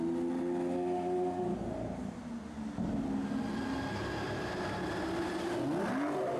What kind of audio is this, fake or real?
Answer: real